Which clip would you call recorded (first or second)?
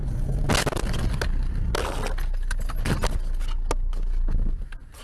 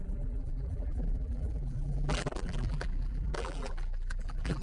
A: first